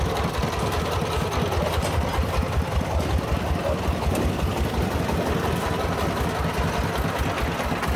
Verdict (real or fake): real